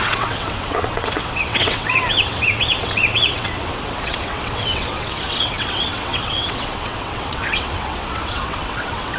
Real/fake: fake